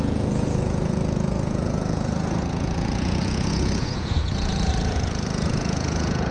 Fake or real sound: fake